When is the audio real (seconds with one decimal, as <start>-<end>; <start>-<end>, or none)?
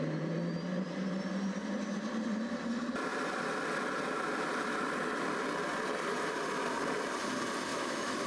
0.0-7.7